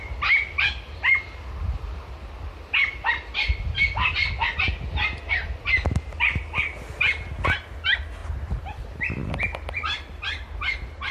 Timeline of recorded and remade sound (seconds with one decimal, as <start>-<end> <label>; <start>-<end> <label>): 0.0-8.2 recorded; 8.2-10.6 remade; 10.6-11.1 recorded